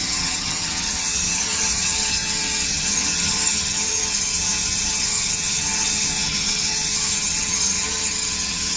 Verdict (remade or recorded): remade